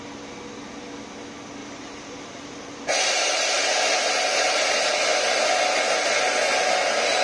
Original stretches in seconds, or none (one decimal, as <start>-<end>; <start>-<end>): 0.0-1.6; 4.9-7.2

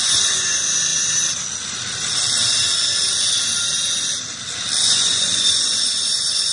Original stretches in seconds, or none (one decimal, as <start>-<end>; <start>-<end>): 0.9-4.8

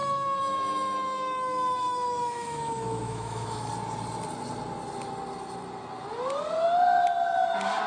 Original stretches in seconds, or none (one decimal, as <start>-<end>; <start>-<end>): 3.7-7.9

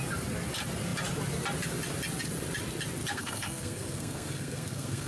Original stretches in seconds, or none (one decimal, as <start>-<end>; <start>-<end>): 0.0-3.1

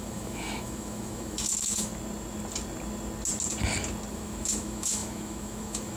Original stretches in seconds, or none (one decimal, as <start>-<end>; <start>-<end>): 1.9-4.1

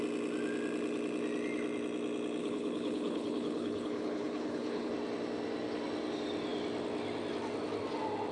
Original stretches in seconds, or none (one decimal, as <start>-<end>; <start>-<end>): 0.0-2.4; 4.9-8.3

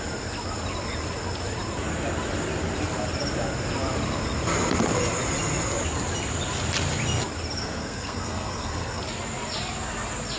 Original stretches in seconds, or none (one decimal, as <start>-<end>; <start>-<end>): 0.0-7.6; 9.0-10.4